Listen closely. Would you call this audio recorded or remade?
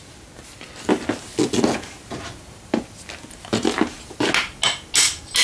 recorded